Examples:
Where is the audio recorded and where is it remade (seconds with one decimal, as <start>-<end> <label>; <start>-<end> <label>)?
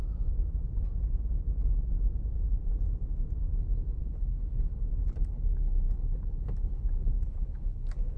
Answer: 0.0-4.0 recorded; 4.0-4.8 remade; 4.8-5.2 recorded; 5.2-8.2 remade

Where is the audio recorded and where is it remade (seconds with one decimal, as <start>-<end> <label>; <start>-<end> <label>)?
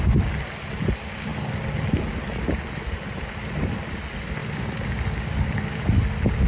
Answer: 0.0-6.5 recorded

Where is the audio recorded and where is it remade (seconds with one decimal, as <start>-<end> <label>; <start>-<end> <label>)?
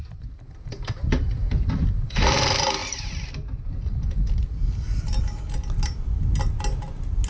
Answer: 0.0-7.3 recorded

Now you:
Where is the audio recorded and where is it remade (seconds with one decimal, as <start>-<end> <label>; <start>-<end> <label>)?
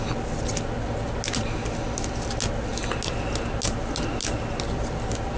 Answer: 0.0-5.4 recorded